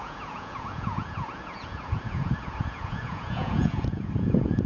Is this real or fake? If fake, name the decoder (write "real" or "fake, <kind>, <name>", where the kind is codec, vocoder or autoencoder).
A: fake, vocoder, Vocos